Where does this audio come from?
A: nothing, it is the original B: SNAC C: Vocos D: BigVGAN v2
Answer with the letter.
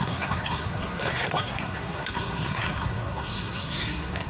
B